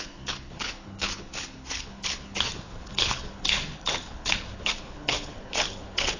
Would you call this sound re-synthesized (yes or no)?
yes